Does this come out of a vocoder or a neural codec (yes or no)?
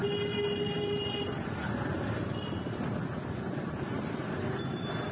no